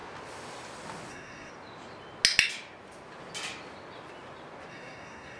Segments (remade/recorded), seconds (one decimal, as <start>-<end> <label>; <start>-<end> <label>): 0.0-1.1 recorded; 1.1-1.5 remade; 1.5-4.7 recorded; 4.7-5.4 remade

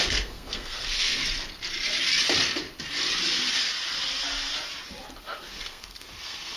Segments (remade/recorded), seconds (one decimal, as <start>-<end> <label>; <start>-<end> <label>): 0.0-1.2 remade; 1.2-5.2 recorded; 5.2-6.6 remade

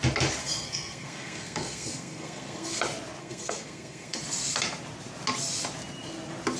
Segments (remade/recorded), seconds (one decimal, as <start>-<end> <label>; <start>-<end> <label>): 0.0-0.4 recorded; 0.4-2.8 remade; 2.8-3.2 recorded; 3.2-4.2 remade; 4.2-6.6 recorded

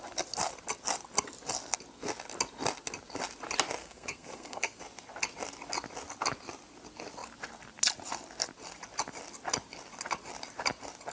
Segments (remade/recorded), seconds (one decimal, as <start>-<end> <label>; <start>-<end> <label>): 0.0-3.8 recorded; 3.8-4.8 remade; 4.8-11.1 recorded

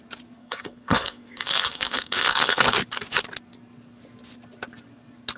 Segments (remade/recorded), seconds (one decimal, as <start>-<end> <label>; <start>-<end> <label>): 0.0-0.4 recorded; 0.4-2.6 remade; 2.6-5.4 recorded

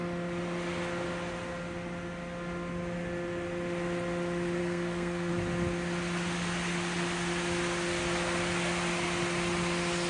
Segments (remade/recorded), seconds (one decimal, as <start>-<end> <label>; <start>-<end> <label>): 0.0-4.6 recorded; 4.6-5.3 remade; 5.3-10.1 recorded

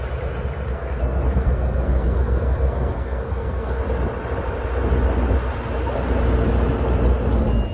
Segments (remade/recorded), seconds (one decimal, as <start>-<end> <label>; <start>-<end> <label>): 0.0-0.7 recorded; 0.7-3.8 remade; 3.8-7.7 recorded